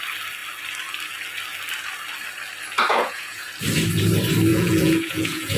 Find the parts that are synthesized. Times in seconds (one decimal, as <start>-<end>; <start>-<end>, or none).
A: 2.9-3.5; 4.5-5.6